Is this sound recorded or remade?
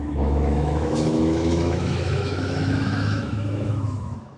remade